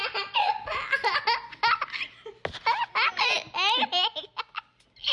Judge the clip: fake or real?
real